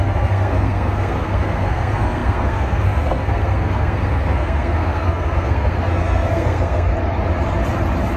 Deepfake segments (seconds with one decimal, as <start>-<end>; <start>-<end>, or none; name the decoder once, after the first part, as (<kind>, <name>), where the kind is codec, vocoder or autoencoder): 0.0-6.9 (codec, SNAC)